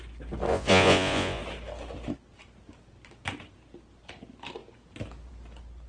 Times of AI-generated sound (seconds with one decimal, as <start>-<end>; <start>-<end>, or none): 0.5-1.4